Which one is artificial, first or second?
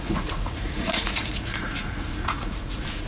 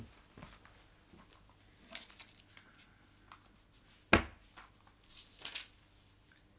first